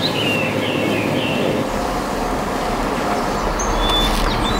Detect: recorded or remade recorded